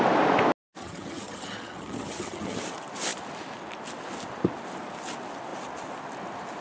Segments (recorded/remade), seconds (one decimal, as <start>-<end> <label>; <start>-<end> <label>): 0.0-0.8 recorded; 0.8-2.6 remade; 2.6-6.6 recorded